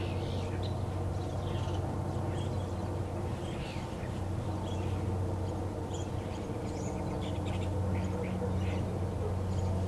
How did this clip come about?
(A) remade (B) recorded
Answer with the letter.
B